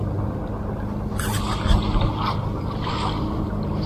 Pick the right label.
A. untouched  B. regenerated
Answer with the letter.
A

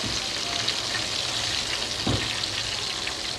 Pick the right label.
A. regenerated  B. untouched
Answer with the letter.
B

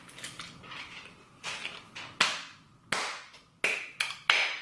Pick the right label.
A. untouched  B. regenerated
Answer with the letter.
A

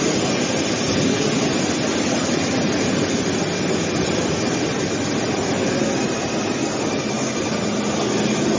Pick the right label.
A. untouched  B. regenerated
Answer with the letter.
A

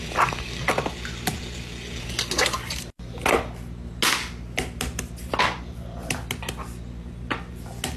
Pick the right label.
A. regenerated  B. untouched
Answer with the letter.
B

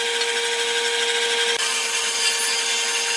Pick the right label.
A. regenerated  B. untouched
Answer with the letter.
B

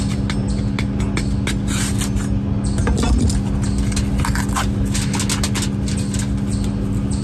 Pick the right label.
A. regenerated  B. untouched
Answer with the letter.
B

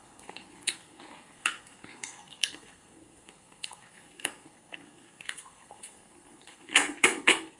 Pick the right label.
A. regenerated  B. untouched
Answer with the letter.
A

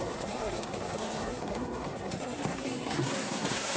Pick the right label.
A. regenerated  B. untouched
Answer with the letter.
A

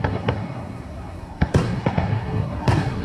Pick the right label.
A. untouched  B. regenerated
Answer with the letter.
B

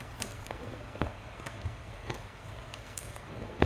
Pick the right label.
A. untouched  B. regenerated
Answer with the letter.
B